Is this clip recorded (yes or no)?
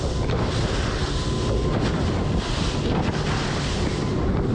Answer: yes